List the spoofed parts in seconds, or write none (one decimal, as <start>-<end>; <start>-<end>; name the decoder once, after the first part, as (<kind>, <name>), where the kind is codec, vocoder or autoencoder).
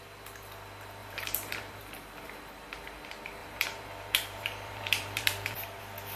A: 1.0-1.8 (vocoder, BigVGAN v2); 3.4-5.8